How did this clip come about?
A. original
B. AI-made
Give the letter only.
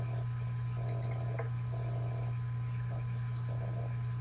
A